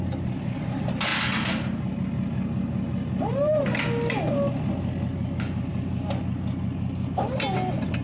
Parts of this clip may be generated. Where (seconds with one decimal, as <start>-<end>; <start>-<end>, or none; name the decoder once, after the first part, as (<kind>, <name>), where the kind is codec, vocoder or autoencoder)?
none